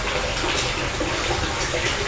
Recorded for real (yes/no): yes